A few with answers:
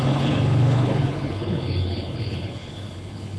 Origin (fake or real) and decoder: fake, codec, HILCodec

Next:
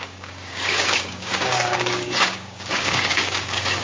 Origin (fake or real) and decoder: fake, codec, DAC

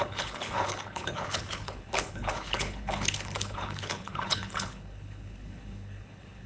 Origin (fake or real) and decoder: fake, codec, HILCodec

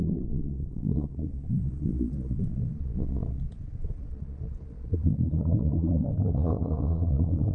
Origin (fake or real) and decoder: fake, vocoder, Vocos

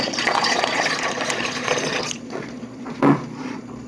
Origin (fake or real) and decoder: fake, vocoder, Vocos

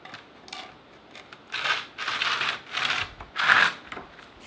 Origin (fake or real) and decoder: real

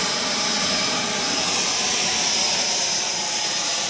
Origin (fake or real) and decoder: real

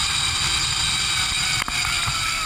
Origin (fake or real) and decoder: real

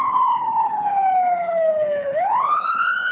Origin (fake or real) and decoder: fake, codec, HILCodec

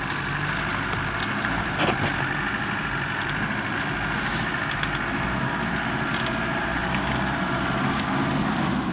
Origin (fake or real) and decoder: real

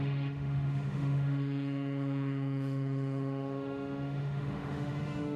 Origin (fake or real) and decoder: fake, autoencoder, DAC-VAE